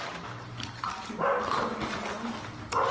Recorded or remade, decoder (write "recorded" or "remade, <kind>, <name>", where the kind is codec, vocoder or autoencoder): recorded